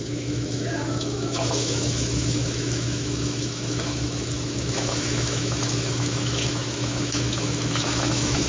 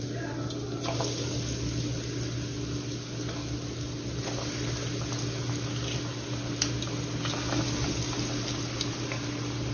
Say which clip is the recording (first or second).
second